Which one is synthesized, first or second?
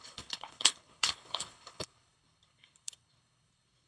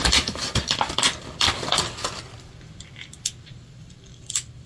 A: first